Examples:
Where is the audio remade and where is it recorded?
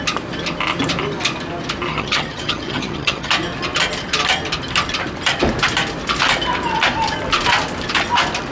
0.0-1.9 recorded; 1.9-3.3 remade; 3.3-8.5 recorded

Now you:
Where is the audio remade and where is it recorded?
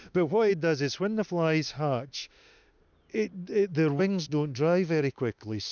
0.0-0.5 remade; 0.5-1.3 recorded; 1.3-2.8 remade; 2.8-4.0 recorded; 4.0-5.7 remade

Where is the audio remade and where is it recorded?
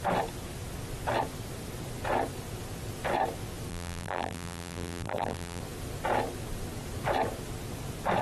0.0-3.7 recorded; 3.7-5.6 remade; 5.6-8.2 recorded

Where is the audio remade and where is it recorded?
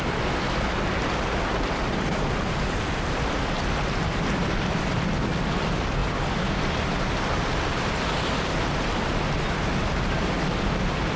0.0-11.2 recorded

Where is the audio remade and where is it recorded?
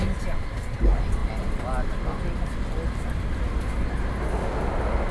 0.0-1.2 recorded; 1.2-3.4 remade; 3.4-5.1 recorded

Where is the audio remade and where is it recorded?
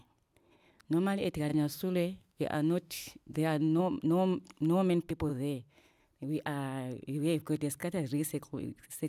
0.0-1.5 recorded; 1.5-3.8 remade; 3.8-5.3 recorded; 5.3-5.9 remade; 5.9-9.1 recorded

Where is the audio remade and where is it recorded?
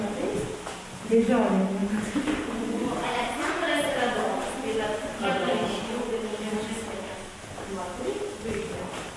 0.0-1.8 recorded; 1.8-6.7 remade; 6.7-9.2 recorded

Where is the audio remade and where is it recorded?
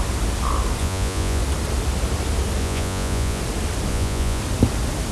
0.0-0.8 recorded; 0.8-1.4 remade; 1.4-2.6 recorded; 2.6-3.4 remade; 3.4-3.9 recorded; 3.9-4.4 remade; 4.4-5.1 recorded